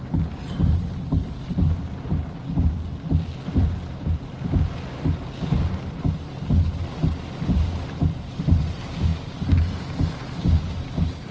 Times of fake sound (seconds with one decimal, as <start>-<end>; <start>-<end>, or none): none